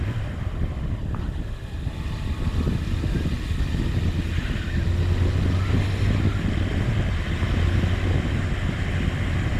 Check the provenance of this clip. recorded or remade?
recorded